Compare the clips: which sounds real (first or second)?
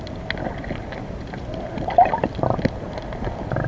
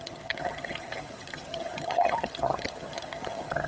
first